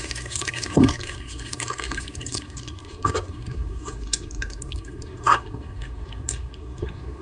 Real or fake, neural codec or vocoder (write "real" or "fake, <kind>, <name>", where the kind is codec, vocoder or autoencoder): fake, codec, SNAC